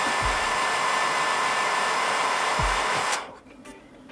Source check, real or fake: fake